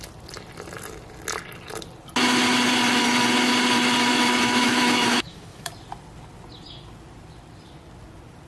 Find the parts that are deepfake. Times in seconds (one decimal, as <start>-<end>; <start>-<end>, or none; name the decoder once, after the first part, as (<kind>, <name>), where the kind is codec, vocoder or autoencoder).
4.1-5.7 (autoencoder, DAC-VAE)